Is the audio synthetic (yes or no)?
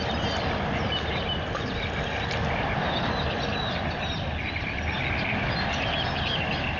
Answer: no